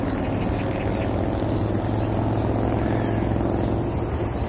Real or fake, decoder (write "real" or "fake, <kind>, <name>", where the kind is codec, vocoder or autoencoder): real